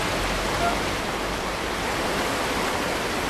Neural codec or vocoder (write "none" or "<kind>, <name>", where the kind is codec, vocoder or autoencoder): none